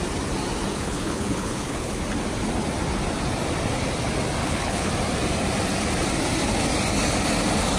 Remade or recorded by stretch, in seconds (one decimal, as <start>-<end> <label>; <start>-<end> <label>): 0.0-0.7 recorded; 0.7-2.0 remade; 2.0-4.4 recorded; 4.4-4.9 remade; 4.9-7.8 recorded